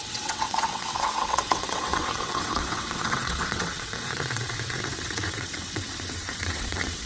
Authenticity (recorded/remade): remade